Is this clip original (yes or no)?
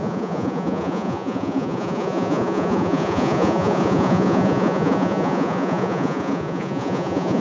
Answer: no